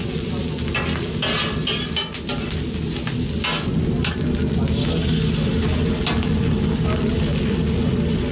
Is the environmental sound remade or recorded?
recorded